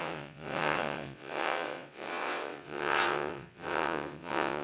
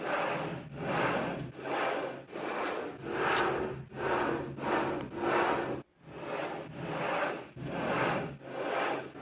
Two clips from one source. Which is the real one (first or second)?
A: second